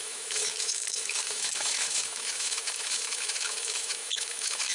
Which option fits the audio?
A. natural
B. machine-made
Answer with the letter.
B